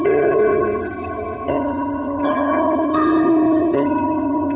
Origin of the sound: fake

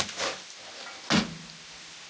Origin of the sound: real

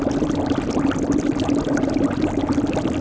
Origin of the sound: real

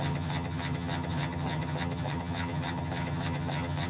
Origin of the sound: fake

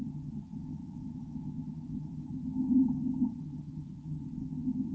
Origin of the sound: fake